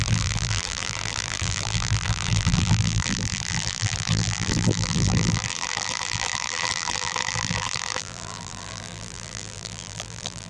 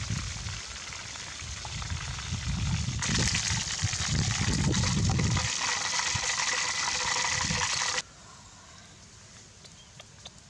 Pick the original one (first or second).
second